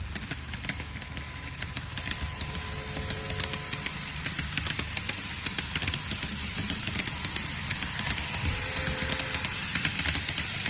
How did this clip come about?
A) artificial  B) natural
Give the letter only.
B